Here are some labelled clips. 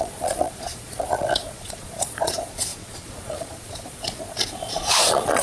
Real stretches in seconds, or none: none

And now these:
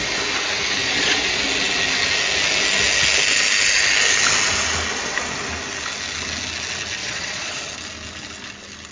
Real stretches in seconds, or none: 0.0-0.8; 1.4-7.0; 7.6-8.9

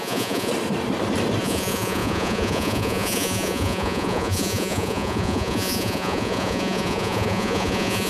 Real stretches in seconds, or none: 0.5-1.4

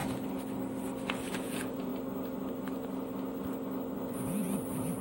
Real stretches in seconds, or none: 0.0-1.1; 1.9-4.0

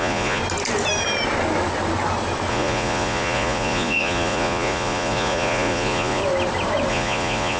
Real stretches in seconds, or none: 0.4-2.5; 6.2-6.9